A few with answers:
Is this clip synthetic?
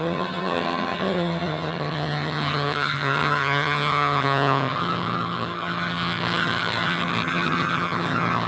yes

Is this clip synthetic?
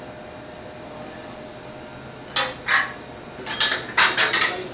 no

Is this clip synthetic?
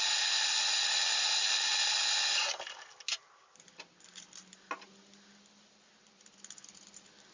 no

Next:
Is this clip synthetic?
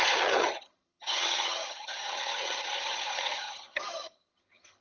yes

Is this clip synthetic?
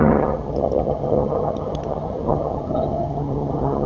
yes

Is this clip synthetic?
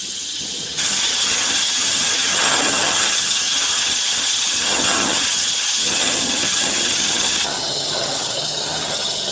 yes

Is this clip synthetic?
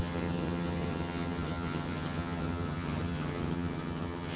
yes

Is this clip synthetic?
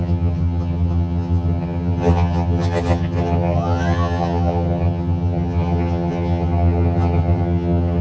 yes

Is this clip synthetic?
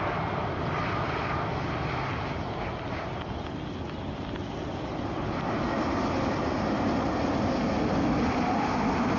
no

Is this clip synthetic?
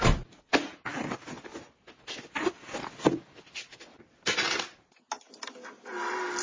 no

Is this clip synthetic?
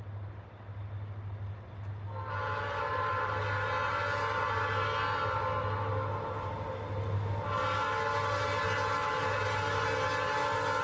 no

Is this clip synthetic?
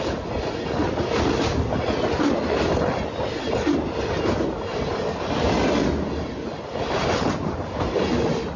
no